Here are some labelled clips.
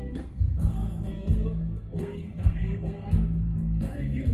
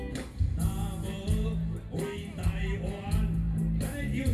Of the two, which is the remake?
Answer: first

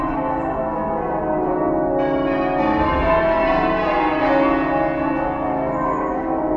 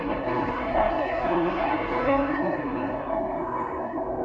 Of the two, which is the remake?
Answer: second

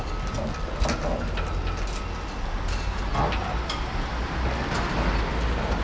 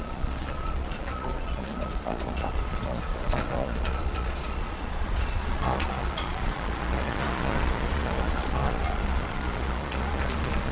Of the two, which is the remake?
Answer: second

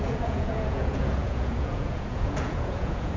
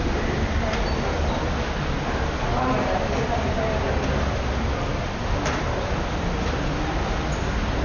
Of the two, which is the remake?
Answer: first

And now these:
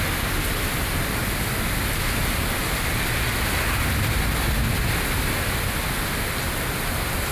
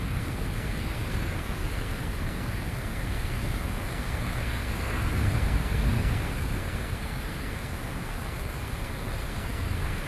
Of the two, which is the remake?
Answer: second